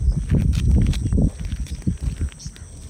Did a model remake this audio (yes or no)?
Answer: no